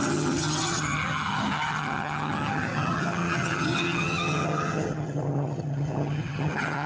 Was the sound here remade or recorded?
remade